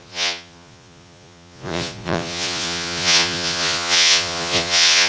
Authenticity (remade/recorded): remade